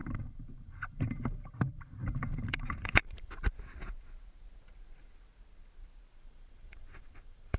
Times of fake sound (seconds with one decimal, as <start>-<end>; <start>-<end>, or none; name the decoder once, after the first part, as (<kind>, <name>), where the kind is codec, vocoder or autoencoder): 0.0-3.5 (vocoder, BigVGAN v2); 6.2-7.6